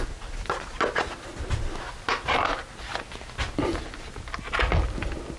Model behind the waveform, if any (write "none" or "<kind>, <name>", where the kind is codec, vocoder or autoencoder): none